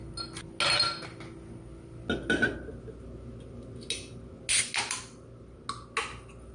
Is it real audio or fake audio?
real